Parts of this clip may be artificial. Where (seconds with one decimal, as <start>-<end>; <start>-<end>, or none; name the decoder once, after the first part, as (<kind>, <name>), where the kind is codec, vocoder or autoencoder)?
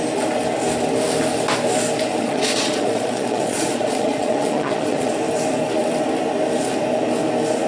2.2-5.1 (vocoder, Vocos)